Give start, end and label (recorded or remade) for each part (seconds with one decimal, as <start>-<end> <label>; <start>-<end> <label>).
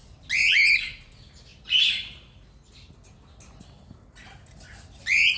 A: 0.0-5.4 recorded